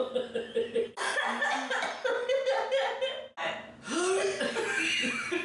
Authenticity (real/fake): real